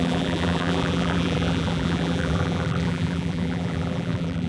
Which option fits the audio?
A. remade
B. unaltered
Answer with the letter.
A